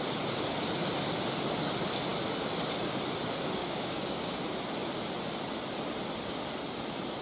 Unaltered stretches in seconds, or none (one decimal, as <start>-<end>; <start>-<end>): 0.0-3.6; 4.3-7.2

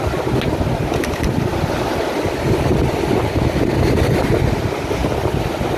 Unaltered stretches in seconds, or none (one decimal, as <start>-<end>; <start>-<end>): 0.0-1.5; 2.0-5.0

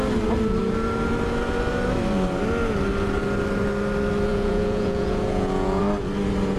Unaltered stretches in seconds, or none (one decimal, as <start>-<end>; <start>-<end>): 0.0-4.3; 5.8-6.6

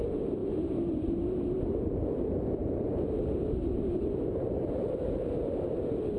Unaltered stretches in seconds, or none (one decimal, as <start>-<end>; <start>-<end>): 0.0-0.4; 0.9-2.6; 5.3-6.2